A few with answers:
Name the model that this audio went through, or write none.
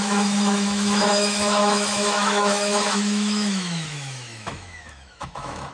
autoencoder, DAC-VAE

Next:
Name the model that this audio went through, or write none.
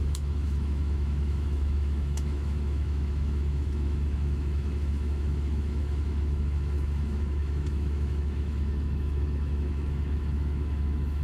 autoencoder, DAC-VAE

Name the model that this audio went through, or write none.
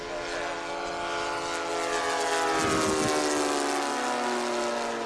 none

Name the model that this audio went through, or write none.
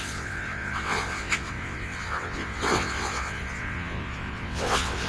vocoder, WaveNeXt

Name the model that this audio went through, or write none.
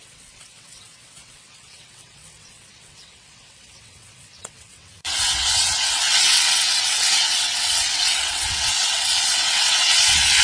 vocoder, WaveNeXt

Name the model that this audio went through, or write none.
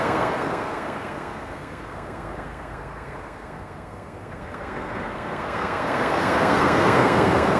codec, SNAC